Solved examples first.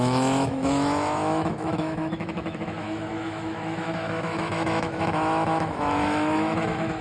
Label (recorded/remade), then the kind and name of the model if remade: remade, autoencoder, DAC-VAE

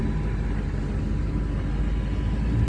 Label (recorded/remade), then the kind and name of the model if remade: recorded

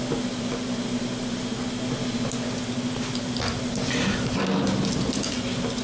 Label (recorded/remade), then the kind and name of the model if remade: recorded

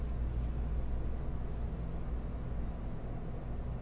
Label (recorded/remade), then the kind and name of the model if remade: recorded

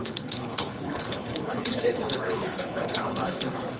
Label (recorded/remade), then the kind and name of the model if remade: remade, codec, HILCodec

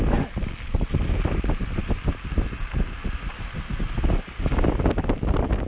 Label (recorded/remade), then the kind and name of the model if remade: recorded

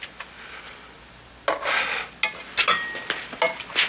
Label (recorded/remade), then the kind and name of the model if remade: recorded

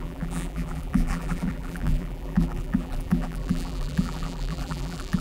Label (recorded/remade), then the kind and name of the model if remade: remade, vocoder, BigVGAN v2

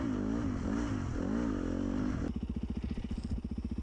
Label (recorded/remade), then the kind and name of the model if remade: recorded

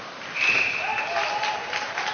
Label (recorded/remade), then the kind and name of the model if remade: recorded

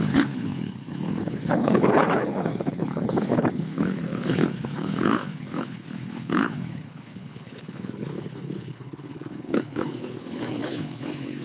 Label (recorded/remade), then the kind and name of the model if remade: remade, codec, HILCodec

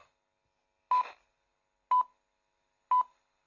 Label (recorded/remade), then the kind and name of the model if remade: recorded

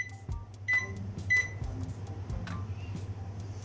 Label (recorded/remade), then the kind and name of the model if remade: recorded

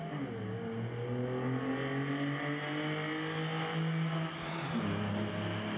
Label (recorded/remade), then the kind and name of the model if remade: recorded